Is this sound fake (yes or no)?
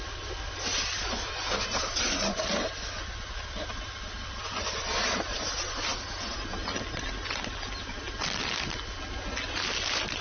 no